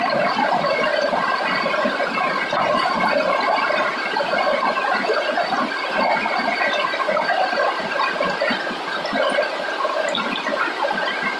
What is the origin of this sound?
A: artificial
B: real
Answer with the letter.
B